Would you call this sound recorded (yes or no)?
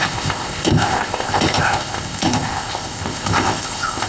no